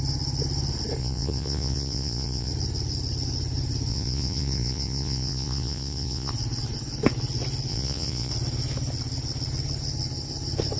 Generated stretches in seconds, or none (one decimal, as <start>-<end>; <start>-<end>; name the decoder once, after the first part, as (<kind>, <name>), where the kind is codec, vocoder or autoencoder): 1.0-2.5 (vocoder, Vocos); 3.9-6.3; 7.7-8.3